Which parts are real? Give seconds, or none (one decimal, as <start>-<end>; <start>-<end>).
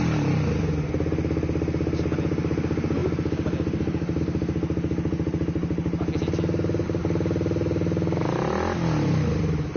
0.0-9.8